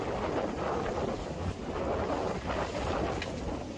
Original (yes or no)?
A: yes